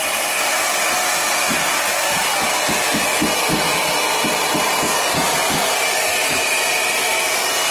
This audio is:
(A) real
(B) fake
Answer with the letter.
A